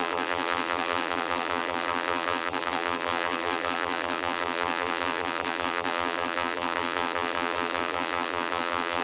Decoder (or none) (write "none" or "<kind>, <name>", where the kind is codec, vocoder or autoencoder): vocoder, BigVGAN v2